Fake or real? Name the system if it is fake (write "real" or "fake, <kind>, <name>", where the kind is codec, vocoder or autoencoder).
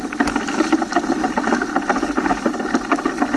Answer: real